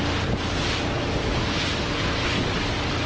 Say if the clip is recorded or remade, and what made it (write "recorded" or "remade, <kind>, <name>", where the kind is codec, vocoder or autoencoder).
recorded